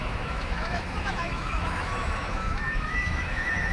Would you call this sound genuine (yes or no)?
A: no